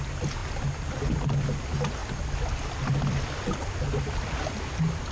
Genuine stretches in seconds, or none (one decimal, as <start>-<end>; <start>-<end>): 0.0-5.1